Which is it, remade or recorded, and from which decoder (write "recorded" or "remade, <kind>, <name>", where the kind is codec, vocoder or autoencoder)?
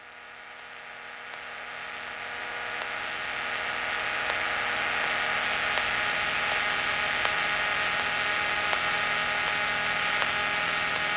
recorded